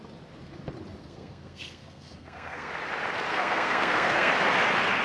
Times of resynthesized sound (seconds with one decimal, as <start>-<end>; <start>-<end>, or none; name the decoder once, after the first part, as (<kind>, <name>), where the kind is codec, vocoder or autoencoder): 1.0-2.7 (codec, SNAC); 3.3-4.3